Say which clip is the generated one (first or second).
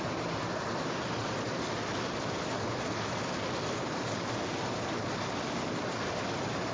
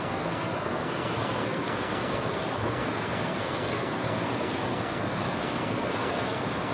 second